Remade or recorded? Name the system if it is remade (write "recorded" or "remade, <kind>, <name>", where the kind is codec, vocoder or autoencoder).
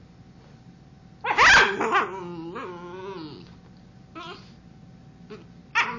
recorded